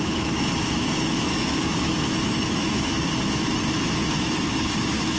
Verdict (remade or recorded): remade